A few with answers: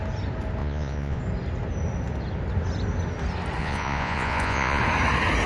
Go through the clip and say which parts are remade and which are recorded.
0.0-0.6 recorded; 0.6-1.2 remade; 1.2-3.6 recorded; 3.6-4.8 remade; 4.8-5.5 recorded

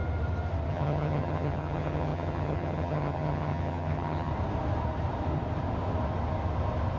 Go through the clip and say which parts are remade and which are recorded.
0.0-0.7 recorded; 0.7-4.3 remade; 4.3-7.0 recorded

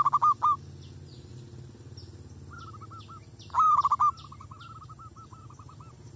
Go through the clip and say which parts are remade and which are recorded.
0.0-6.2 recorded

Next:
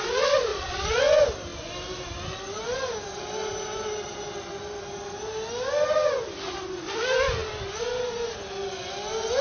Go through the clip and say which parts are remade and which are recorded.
0.0-0.5 recorded; 0.5-1.0 remade; 1.0-9.4 recorded

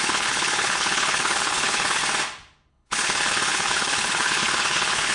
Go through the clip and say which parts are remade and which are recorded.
0.0-2.0 remade; 2.0-2.7 recorded; 2.7-5.1 remade